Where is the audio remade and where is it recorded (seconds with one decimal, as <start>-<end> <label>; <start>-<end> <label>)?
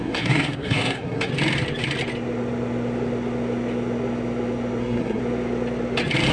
0.0-1.3 remade; 1.3-4.8 recorded; 4.8-5.2 remade; 5.2-6.3 recorded